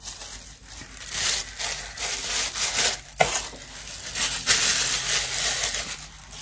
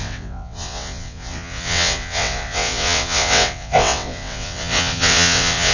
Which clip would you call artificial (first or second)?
second